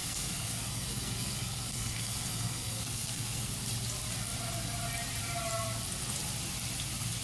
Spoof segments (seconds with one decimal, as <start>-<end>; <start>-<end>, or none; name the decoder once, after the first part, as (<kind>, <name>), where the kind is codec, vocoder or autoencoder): 0.0-3.5 (codec, SNAC)